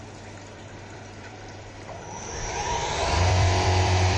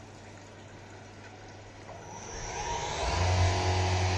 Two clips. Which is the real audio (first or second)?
second